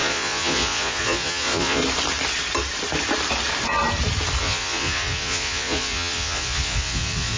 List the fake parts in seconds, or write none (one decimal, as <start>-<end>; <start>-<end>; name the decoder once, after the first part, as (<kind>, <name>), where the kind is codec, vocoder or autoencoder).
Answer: 0.0-1.8 (vocoder, Vocos); 4.4-7.4